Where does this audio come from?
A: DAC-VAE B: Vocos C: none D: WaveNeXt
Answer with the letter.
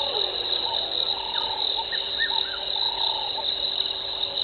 C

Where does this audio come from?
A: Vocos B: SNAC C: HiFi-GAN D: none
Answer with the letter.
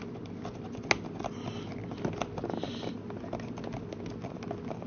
D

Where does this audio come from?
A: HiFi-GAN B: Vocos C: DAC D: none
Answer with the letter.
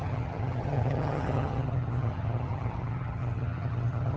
A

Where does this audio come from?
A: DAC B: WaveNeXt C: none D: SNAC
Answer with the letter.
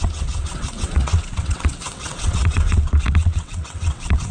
B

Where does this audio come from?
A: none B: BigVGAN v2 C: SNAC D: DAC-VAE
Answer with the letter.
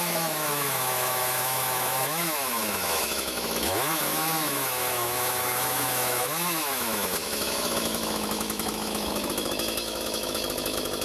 D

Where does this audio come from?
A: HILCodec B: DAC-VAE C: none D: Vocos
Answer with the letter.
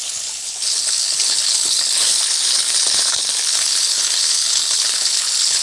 A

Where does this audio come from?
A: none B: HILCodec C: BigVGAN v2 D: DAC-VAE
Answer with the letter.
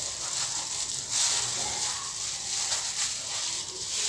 A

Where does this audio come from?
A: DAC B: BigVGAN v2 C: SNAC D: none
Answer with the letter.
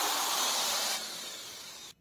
B